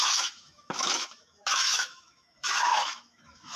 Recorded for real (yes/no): no